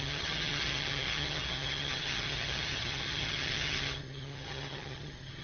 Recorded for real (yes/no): no